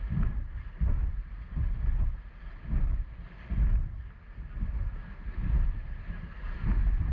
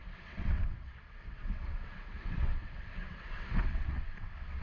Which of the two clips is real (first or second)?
first